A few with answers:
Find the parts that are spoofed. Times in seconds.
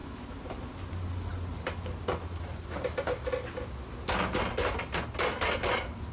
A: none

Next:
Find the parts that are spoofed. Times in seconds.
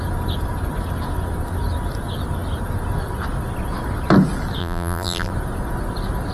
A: 4.6-5.3 (vocoder, BigVGAN v2)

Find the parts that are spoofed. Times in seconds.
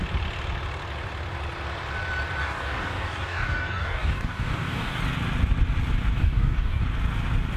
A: 2.4-5.0 (codec, DAC); 6.2-6.8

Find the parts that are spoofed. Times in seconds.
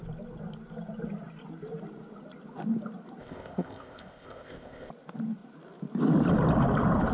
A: 3.2-4.9 (codec, ZipCodec)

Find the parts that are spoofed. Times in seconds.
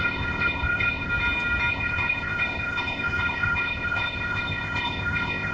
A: 0.0-1.1 (codec, ZipCodec); 1.7-5.5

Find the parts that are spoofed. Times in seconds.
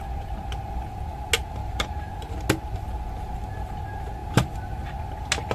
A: 1.6-2.3 (vocoder, BigVGAN v2)